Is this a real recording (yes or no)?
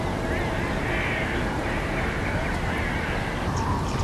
yes